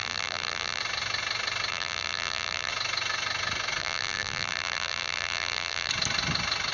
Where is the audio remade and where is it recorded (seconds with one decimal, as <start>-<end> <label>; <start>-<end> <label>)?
0.0-0.8 remade; 0.8-1.7 recorded; 1.7-2.7 remade; 2.7-3.8 recorded; 3.8-5.9 remade; 5.9-6.7 recorded